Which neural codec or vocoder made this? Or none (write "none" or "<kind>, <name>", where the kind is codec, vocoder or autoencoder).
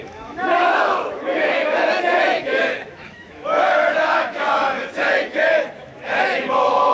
autoencoder, DAC-VAE